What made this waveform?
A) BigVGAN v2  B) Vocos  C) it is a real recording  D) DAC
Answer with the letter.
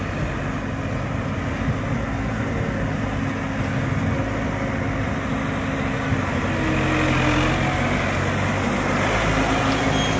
C